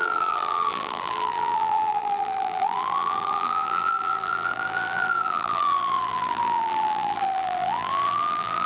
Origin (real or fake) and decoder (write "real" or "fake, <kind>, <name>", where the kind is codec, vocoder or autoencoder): fake, vocoder, BigVGAN v2